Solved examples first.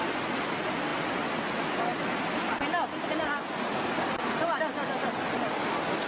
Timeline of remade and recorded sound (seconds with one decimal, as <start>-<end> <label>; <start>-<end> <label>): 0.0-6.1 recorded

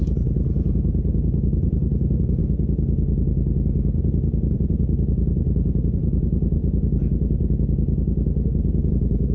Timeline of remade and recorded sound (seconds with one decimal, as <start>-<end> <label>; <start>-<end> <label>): 0.0-2.4 remade; 2.4-4.5 recorded; 4.5-6.6 remade; 6.6-8.9 recorded; 8.9-9.3 remade

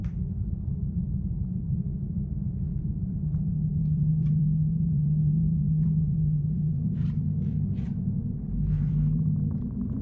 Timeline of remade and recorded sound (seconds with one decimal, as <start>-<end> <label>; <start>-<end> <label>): 0.0-1.9 remade; 1.9-2.7 recorded; 2.7-10.0 remade

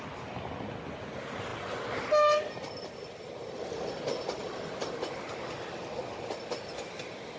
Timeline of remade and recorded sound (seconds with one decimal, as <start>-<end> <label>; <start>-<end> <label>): 0.0-7.4 recorded

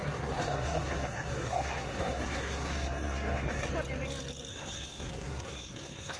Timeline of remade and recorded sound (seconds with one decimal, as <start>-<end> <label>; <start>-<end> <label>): 0.0-3.7 remade; 3.7-4.5 recorded; 4.5-6.2 remade